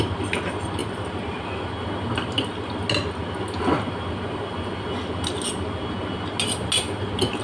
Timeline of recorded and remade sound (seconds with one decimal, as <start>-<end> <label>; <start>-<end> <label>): 0.0-0.8 recorded; 0.8-1.4 remade; 1.4-7.4 recorded